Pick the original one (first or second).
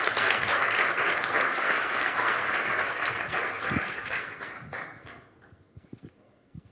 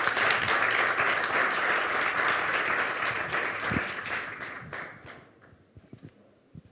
second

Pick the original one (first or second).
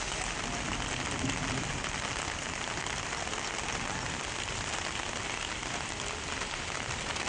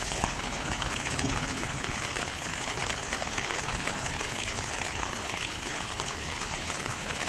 first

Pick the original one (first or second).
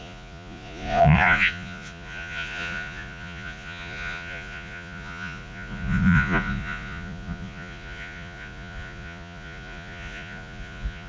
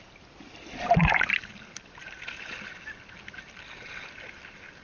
second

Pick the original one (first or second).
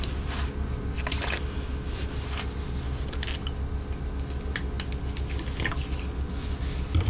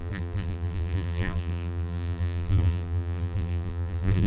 first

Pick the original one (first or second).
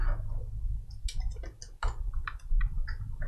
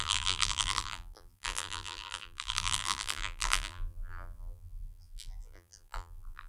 first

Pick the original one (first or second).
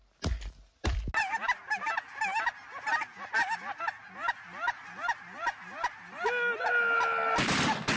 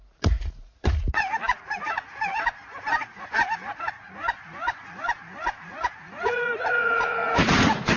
first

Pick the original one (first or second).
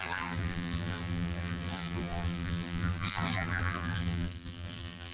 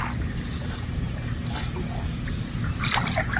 second